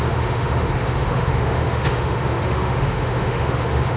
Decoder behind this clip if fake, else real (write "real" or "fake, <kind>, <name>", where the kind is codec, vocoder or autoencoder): fake, autoencoder, DAC-VAE